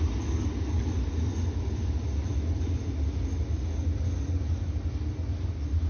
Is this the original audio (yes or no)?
yes